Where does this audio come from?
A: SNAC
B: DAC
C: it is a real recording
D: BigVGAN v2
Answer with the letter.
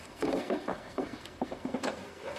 A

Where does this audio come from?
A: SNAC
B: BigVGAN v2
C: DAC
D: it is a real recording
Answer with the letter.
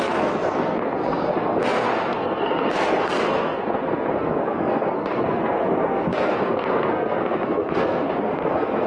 A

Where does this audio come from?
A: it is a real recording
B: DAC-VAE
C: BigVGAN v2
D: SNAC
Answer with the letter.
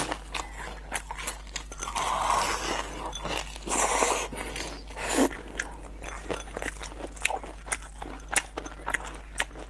A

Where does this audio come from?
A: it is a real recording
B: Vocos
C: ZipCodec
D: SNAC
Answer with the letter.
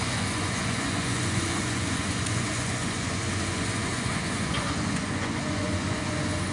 B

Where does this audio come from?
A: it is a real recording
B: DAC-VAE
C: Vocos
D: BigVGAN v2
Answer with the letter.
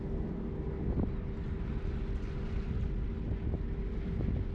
A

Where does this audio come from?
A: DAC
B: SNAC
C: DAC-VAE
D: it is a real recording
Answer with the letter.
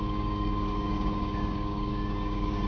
A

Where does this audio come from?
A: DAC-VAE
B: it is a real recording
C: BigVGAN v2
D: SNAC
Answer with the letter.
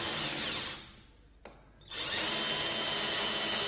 B